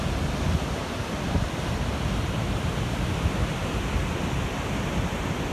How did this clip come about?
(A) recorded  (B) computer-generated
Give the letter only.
A